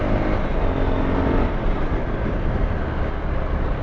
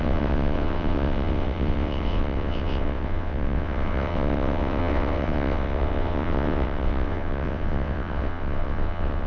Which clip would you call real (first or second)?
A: first